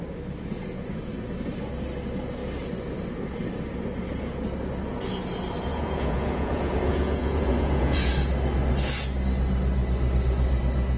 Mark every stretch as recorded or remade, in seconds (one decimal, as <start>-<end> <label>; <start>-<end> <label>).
0.0-5.7 recorded; 5.7-8.1 remade; 8.1-11.0 recorded